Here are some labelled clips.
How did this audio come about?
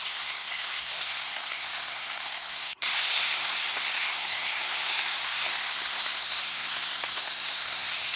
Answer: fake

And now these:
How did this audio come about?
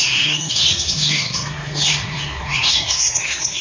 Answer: fake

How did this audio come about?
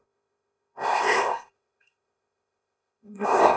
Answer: fake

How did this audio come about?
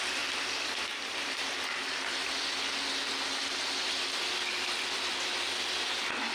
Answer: real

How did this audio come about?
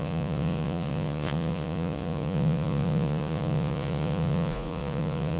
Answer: fake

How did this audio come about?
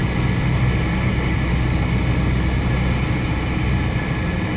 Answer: real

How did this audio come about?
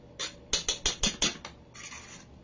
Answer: real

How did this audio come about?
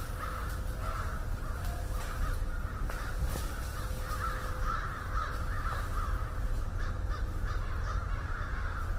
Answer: real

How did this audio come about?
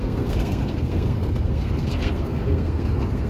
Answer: fake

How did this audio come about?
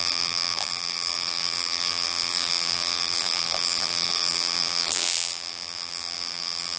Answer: fake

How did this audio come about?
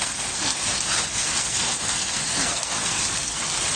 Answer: fake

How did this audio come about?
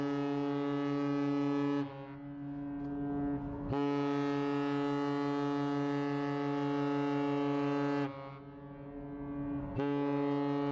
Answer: real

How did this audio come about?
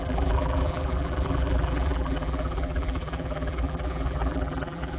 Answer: fake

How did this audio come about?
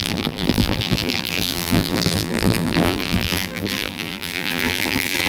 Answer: fake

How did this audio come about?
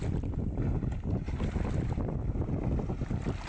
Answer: real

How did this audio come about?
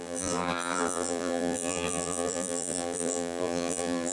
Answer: fake